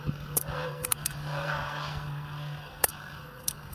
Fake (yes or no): yes